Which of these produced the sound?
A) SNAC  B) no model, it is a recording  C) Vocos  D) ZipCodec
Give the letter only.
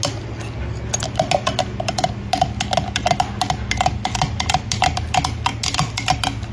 B